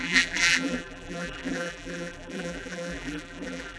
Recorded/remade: remade